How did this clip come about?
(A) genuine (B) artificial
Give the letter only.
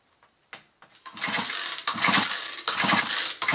A